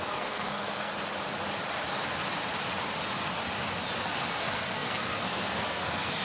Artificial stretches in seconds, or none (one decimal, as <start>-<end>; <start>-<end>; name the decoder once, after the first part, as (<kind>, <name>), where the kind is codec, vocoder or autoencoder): 0.0-0.9 (codec, SNAC); 4.0-6.2